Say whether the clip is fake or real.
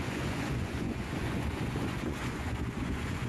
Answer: fake